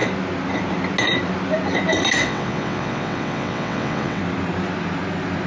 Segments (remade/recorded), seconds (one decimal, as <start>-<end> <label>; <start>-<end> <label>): 0.0-2.2 recorded; 2.2-4.2 remade; 4.2-5.5 recorded